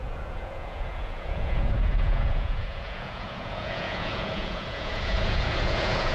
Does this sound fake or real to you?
fake